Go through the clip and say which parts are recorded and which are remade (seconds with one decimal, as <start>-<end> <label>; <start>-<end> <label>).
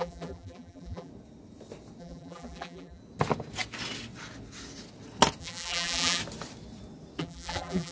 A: 0.0-1.1 remade; 1.1-2.0 recorded; 2.0-3.0 remade; 3.0-5.4 recorded; 5.4-6.2 remade; 6.2-7.2 recorded; 7.2-7.9 remade